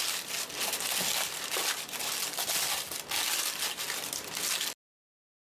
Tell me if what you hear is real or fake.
real